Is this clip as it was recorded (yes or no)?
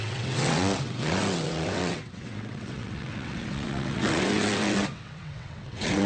no